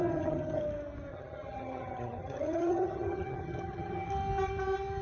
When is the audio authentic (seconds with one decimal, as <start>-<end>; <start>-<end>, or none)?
0.6-1.1; 4.1-5.0